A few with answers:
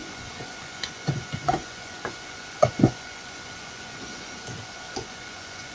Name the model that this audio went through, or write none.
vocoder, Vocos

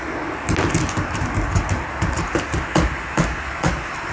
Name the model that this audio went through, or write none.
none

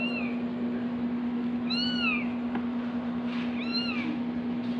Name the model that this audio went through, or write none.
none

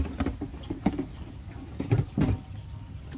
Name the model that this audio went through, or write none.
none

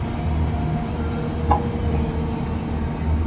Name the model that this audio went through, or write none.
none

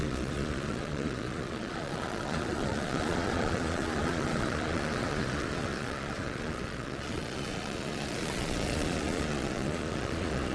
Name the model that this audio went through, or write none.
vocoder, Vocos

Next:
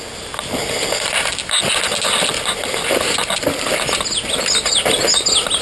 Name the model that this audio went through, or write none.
none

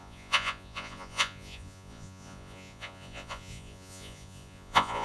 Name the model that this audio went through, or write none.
vocoder, Vocos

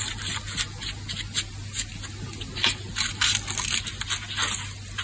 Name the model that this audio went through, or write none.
none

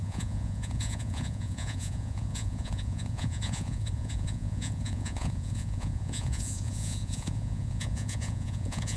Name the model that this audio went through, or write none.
vocoder, Vocos